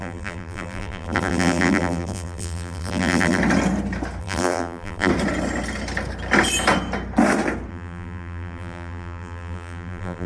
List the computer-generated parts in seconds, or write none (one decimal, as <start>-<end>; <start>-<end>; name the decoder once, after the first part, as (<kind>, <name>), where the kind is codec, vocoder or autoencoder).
0.0-3.4 (vocoder, BigVGAN v2); 4.2-5.1; 7.7-10.3